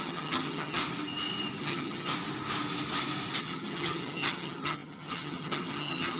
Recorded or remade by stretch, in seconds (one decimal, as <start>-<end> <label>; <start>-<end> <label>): 0.0-0.8 remade; 0.8-1.6 recorded; 1.6-2.1 remade; 2.1-3.4 recorded; 3.4-6.2 remade